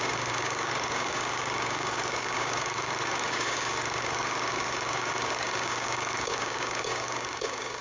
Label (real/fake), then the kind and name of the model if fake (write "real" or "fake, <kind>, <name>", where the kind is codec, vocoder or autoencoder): fake, codec, DAC